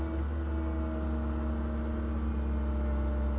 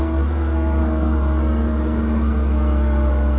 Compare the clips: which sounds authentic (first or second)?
first